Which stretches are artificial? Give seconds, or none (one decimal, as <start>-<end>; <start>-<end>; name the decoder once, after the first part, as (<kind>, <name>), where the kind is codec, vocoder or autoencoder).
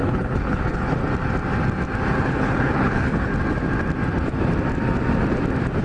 0.0-1.0 (codec, HILCodec); 2.2-3.3